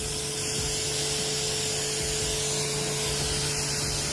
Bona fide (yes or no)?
yes